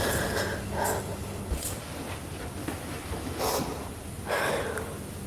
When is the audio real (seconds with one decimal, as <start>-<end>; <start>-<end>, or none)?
0.0-2.6; 3.4-5.3